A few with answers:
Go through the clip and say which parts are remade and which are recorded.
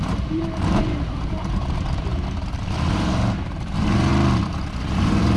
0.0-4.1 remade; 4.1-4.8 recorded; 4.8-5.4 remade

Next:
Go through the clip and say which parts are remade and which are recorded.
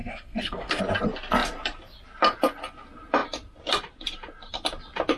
0.0-0.8 remade; 0.8-5.2 recorded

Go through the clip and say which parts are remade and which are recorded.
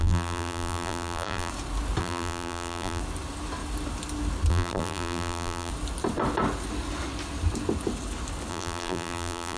0.0-1.5 remade; 1.5-2.0 recorded; 2.0-3.0 remade; 3.0-4.5 recorded; 4.5-5.7 remade; 5.7-8.5 recorded; 8.5-9.6 remade